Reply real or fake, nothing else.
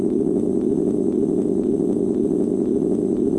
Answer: real